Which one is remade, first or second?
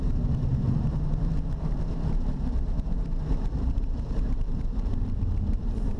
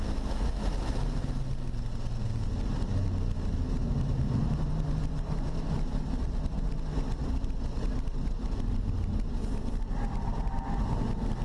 first